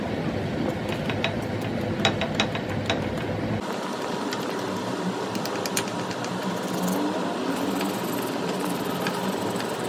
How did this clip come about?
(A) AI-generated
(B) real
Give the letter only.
B